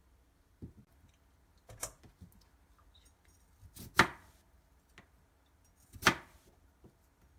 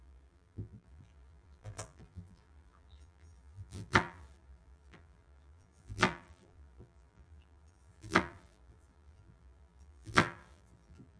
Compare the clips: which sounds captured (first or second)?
first